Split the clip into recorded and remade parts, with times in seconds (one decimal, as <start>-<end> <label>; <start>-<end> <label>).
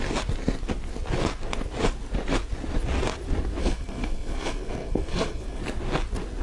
0.0-3.6 recorded; 3.6-5.6 remade; 5.6-6.4 recorded